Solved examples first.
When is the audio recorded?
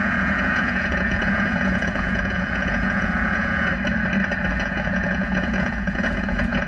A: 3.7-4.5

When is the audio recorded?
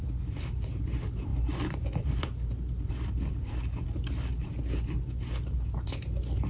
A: 0.0-6.5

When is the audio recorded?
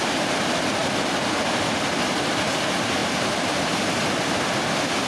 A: 0.0-3.0; 3.6-5.1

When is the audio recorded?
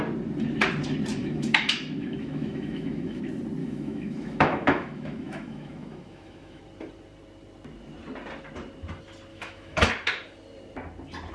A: 0.0-1.2; 3.2-3.6; 6.6-9.3; 9.9-11.3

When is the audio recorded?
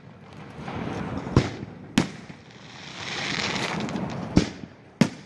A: 0.0-2.9; 3.8-5.3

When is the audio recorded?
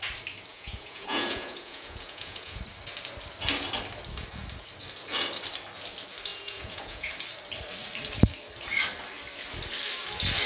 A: 0.0-0.5; 2.6-6.3; 7.1-10.5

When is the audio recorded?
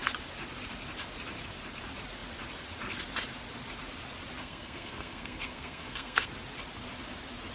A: 0.0-4.4; 6.3-7.5